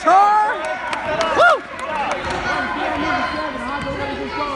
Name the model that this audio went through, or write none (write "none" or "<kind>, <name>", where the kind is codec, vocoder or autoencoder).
none